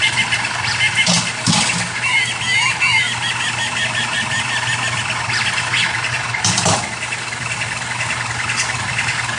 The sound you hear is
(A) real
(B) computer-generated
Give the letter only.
A